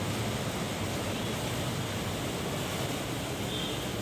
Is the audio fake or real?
real